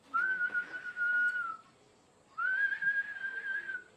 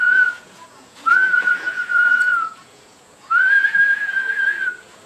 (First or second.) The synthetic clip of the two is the second